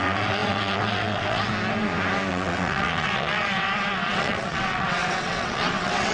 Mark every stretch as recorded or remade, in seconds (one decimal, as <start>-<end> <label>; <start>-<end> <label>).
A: 0.0-1.5 remade; 1.5-2.3 recorded; 2.3-6.1 remade